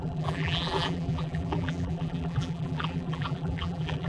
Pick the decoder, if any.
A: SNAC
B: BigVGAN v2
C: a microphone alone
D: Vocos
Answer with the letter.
B